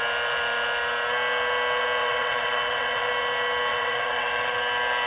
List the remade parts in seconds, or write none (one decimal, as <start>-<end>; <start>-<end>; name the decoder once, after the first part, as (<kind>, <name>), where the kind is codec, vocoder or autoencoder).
2.0-3.1 (vocoder, WaveNeXt); 3.7-4.6